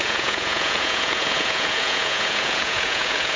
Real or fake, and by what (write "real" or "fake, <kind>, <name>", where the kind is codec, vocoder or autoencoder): fake, vocoder, Vocos